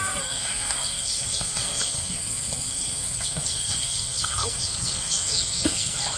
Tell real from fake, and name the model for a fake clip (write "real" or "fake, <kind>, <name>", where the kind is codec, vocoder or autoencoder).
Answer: fake, codec, SNAC